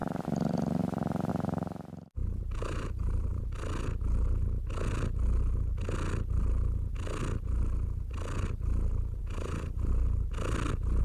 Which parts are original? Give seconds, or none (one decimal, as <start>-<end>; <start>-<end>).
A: 1.3-2.2; 3.4-9.2; 9.9-11.0